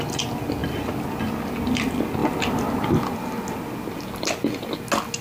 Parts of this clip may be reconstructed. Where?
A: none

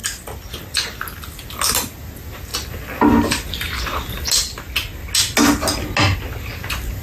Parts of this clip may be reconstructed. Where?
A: none

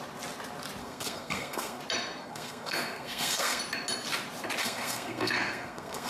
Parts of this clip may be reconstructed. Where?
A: 0.8-1.8; 2.2-3.6; 4.6-6.1